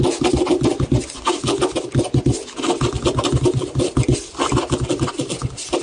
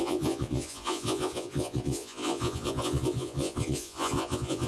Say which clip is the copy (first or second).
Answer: second